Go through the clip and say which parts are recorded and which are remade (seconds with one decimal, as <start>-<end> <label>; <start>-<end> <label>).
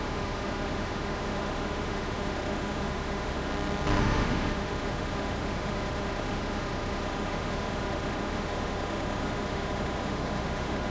0.0-3.5 remade; 3.5-4.0 recorded; 4.0-10.9 remade